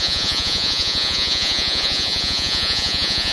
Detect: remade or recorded remade